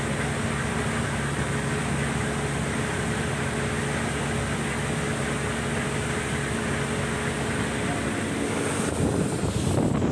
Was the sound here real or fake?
real